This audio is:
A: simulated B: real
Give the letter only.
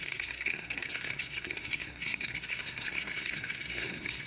A